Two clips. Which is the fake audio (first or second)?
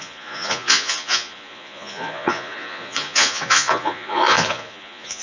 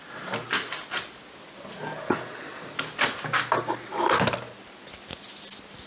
first